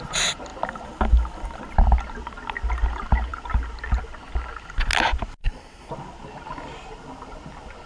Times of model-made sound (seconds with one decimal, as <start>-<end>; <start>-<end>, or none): 5.4-5.9